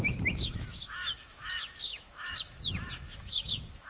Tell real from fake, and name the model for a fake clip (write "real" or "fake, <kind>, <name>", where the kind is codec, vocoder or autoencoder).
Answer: fake, autoencoder, DAC-VAE